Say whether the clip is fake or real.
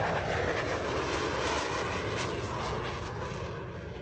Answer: real